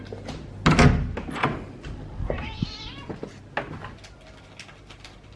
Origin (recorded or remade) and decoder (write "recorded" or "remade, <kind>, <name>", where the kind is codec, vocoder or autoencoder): recorded